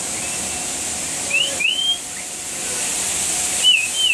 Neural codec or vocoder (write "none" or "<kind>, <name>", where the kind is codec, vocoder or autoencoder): none